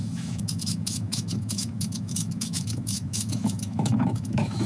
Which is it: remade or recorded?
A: remade